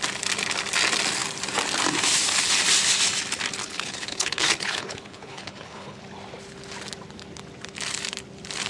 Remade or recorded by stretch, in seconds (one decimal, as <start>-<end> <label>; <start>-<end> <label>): 0.0-3.6 recorded; 3.6-6.0 remade; 6.0-8.7 recorded